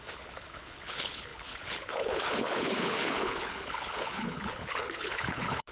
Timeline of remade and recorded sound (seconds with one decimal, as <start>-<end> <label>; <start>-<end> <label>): 0.0-5.7 remade